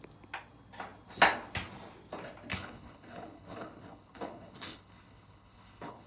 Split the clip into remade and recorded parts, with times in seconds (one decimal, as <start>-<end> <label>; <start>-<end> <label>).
0.0-2.5 recorded; 2.5-6.1 remade